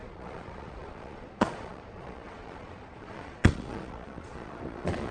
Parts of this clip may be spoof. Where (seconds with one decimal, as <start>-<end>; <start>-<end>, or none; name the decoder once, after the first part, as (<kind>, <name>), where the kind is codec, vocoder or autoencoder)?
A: 0.0-5.1 (vocoder, Vocos)